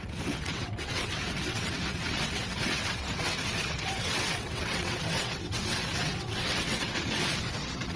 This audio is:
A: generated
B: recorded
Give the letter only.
A